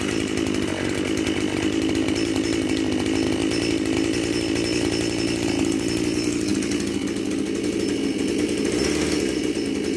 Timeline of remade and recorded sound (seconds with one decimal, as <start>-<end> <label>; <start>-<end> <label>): 0.0-10.0 recorded